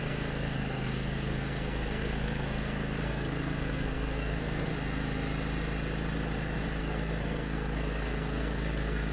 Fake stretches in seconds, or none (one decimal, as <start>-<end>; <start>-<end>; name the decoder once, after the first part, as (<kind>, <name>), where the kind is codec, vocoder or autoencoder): 0.0-4.7 (codec, SNAC); 6.8-9.1